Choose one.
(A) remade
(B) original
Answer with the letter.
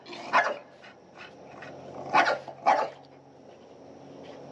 B